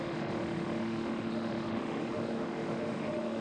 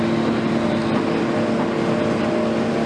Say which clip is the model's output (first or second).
first